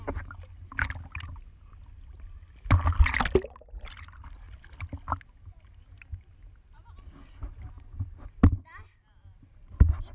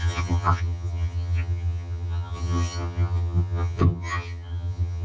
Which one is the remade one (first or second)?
second